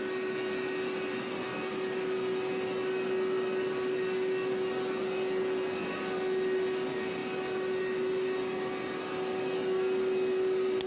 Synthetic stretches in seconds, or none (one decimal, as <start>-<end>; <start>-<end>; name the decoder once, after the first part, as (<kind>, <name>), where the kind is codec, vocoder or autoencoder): none